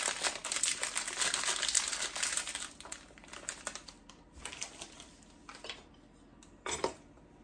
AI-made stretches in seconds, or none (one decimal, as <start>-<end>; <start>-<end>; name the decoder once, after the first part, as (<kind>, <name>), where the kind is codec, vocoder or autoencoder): none